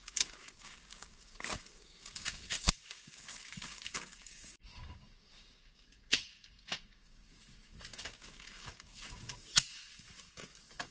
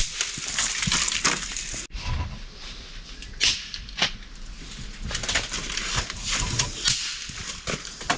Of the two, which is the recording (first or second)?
second